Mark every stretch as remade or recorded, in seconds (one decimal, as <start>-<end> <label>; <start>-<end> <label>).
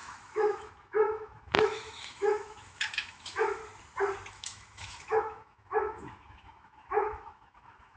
0.0-3.6 remade; 3.6-4.3 recorded; 4.3-8.0 remade